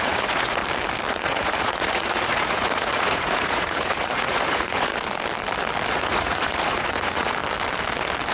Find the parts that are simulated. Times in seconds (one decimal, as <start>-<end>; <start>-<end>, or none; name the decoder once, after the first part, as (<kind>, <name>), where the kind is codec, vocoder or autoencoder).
0.0-0.6 (vocoder, Vocos); 1.1-4.9; 5.9-7.4